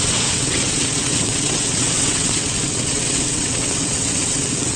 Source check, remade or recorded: remade